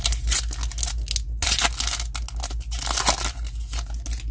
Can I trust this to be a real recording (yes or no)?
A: yes